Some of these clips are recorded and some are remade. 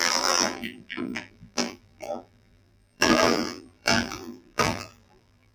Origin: remade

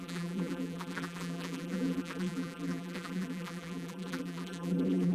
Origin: remade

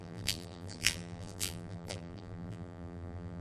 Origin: remade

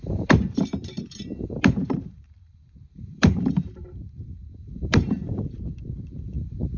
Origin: remade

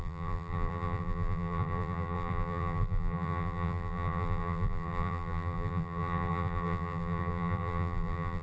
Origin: remade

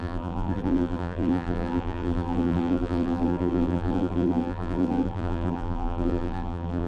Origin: remade